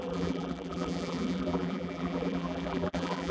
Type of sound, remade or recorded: remade